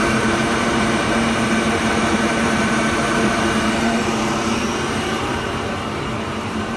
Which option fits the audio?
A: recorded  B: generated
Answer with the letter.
B